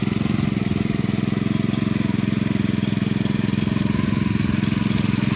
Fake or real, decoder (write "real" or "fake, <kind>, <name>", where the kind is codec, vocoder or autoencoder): real